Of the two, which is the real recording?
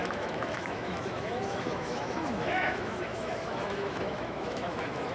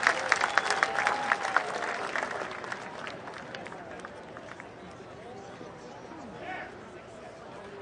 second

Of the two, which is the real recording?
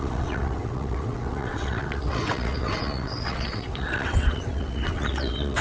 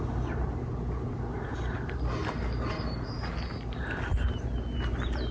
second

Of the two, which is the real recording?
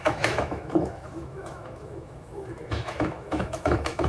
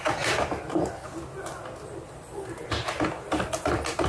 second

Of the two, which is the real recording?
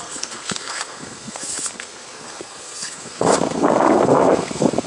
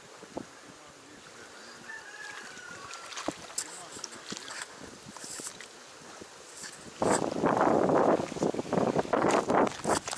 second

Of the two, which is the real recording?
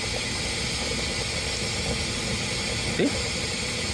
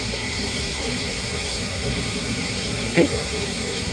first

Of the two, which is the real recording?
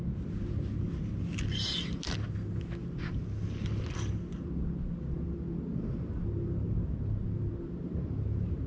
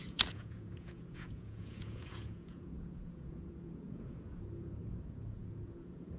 first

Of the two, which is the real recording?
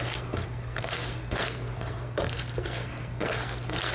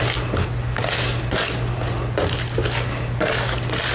second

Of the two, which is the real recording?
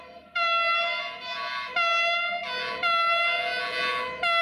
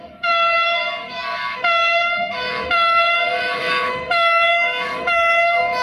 first